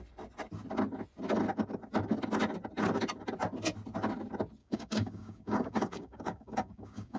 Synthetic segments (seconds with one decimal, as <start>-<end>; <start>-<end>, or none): 4.6-7.2